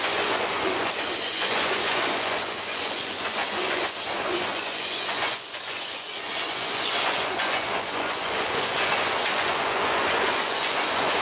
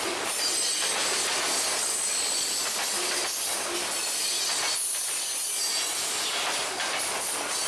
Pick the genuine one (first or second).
second